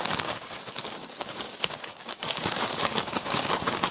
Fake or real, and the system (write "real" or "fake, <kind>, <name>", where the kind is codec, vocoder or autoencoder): fake, codec, DAC